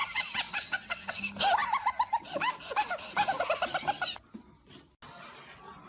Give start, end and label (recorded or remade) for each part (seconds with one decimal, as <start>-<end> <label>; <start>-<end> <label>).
0.0-1.2 remade; 1.2-5.9 recorded

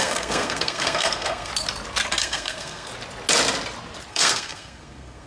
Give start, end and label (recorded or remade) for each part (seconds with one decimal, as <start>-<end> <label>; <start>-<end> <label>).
0.0-1.5 remade; 1.5-2.2 recorded; 2.2-2.9 remade; 2.9-4.1 recorded; 4.1-5.3 remade

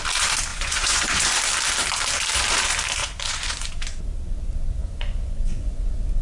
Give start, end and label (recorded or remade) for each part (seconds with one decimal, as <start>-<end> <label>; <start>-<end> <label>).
0.0-0.5 recorded; 0.5-1.4 remade; 1.4-3.0 recorded; 3.0-3.7 remade; 3.7-4.8 recorded; 4.8-5.7 remade; 5.7-6.2 recorded

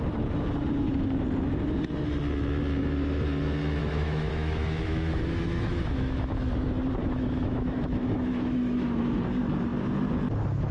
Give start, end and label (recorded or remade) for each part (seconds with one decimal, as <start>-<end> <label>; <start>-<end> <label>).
0.0-3.8 recorded; 3.8-6.4 remade; 6.4-7.0 recorded; 7.0-9.0 remade; 9.0-10.7 recorded

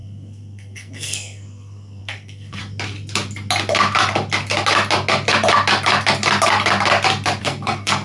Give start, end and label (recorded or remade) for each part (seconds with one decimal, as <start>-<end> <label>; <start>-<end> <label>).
0.0-2.6 remade; 2.6-7.4 recorded; 7.4-8.0 remade

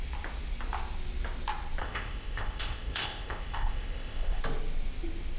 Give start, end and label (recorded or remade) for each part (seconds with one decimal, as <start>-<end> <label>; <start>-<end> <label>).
0.0-1.8 recorded; 1.8-4.4 remade; 4.4-5.4 recorded